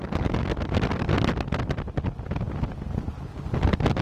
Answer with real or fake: real